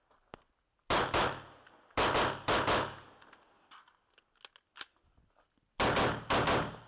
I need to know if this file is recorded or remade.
recorded